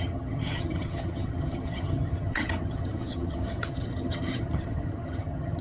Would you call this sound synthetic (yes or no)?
yes